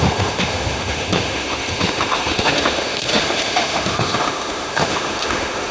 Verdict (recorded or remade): remade